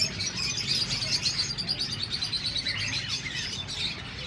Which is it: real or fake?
real